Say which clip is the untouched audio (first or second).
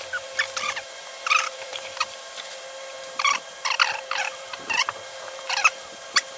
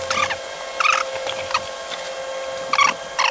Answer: second